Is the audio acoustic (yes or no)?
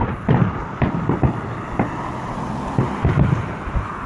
yes